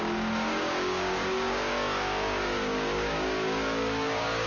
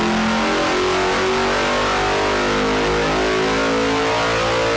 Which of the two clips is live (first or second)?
second